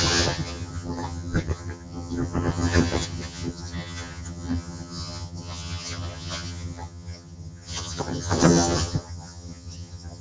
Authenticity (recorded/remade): remade